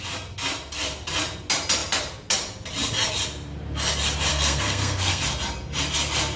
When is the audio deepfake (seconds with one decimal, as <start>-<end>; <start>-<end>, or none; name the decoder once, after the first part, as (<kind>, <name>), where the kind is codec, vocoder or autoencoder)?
4.3-5.2 (codec, SNAC)